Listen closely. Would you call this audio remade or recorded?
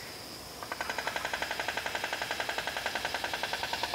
recorded